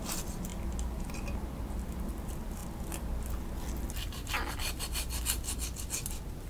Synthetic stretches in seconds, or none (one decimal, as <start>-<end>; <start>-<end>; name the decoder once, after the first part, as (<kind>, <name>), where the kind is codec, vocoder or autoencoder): none